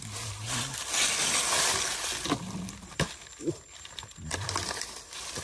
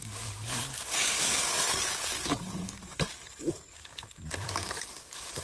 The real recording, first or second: first